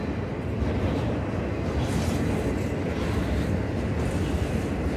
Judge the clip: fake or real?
real